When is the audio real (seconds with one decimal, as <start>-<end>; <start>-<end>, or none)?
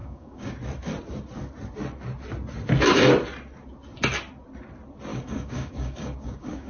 0.5-5.1